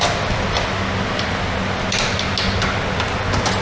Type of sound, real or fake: real